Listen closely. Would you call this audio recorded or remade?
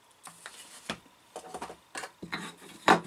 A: recorded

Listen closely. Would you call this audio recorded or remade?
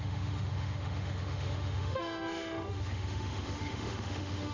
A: remade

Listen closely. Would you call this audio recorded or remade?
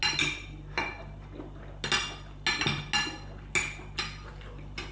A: recorded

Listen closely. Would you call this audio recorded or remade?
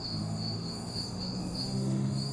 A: remade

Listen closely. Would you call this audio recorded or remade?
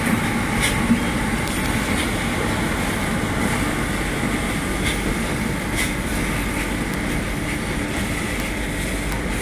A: recorded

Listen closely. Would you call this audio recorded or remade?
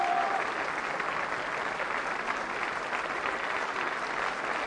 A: recorded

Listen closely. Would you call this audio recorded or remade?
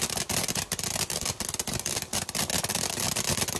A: recorded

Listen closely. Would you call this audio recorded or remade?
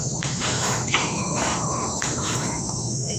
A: remade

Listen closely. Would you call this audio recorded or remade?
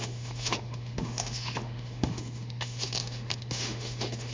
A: remade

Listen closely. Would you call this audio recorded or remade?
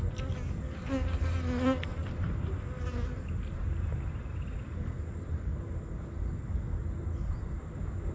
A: recorded